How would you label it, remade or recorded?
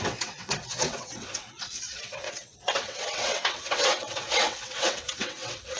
remade